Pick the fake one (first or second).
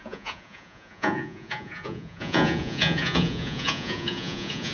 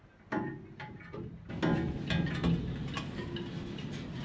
first